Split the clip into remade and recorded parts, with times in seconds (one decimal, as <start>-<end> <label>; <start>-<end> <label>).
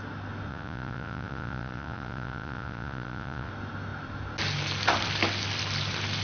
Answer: 0.0-0.5 recorded; 0.5-3.5 remade; 3.5-6.2 recorded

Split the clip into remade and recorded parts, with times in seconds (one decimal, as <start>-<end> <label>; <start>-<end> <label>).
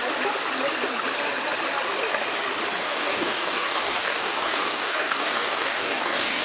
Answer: 0.0-2.8 recorded; 2.8-6.4 remade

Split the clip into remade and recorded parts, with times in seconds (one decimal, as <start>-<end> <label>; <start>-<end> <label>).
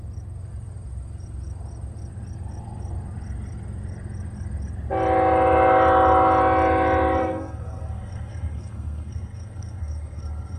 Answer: 0.0-7.2 recorded; 7.2-10.6 remade